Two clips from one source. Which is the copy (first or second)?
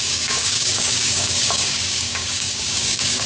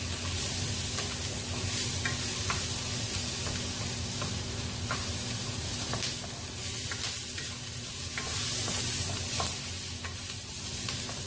first